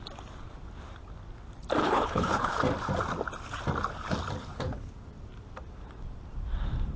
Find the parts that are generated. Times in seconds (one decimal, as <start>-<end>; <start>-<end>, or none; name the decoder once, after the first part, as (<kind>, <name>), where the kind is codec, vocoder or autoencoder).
1.8-2.6 (codec, HILCodec); 4.4-4.9